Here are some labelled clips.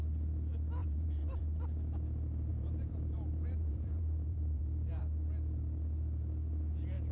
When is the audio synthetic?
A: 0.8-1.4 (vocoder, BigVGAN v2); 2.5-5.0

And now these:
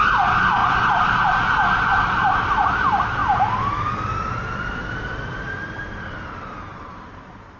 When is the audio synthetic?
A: none

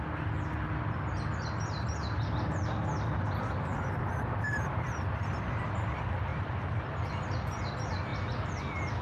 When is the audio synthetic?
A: 3.7-5.6 (vocoder, BigVGAN v2); 6.3-6.9

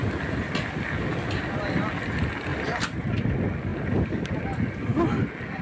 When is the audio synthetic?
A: 2.5-3.1 (vocoder, BigVGAN v2); 3.7-4.4